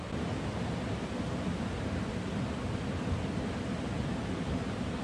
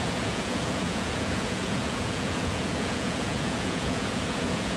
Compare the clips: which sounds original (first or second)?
first